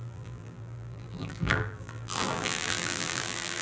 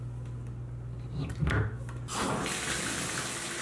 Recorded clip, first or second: second